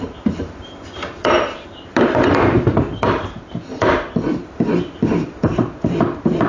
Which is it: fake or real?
fake